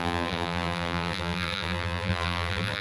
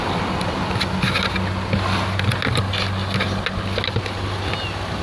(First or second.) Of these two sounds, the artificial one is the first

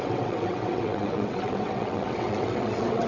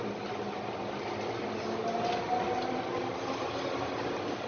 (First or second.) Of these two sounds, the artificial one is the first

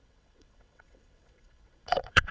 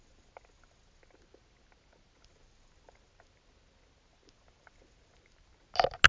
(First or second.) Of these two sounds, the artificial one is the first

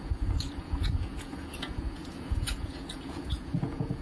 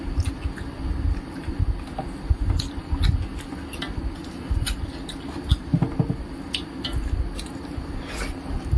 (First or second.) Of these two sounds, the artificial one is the first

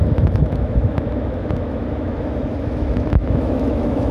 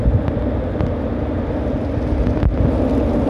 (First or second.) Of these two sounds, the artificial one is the first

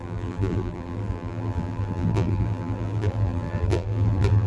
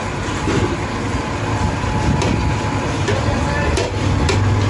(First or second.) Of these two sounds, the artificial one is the first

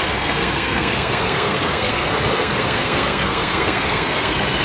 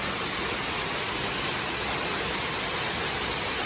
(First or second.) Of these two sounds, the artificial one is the first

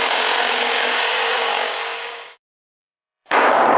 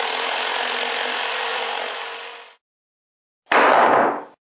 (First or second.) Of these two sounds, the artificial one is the first